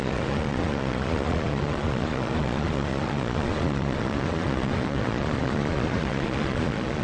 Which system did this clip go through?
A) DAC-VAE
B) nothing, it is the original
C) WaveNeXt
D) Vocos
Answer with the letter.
D